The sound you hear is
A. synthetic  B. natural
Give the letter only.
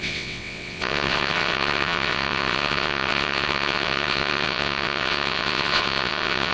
A